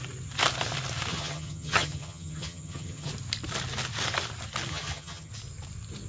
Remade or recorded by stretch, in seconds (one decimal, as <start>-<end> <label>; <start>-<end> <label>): 0.0-1.1 recorded; 1.1-3.1 remade; 3.1-4.7 recorded; 4.7-5.3 remade; 5.3-6.1 recorded